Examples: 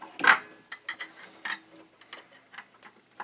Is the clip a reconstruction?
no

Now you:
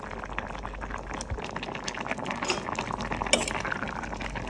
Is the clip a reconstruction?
no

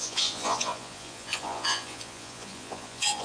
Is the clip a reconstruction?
yes